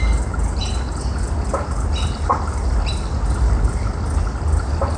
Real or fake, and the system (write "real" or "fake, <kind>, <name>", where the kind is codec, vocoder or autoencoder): real